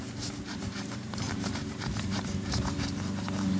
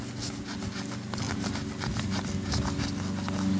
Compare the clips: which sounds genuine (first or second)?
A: second